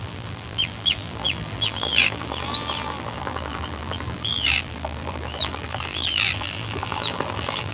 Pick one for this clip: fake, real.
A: fake